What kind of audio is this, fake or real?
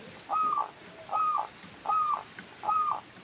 real